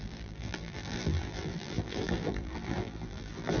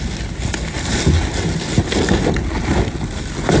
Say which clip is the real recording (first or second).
second